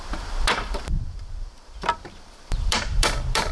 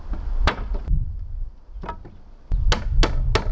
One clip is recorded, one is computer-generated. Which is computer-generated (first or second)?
first